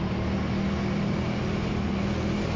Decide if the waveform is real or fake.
real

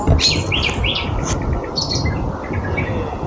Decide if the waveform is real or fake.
real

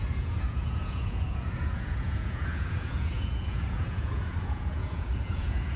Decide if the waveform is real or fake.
fake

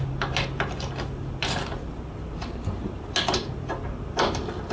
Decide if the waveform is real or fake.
real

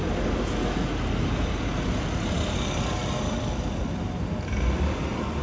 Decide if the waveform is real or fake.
real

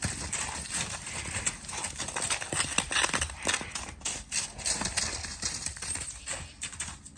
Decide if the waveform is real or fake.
real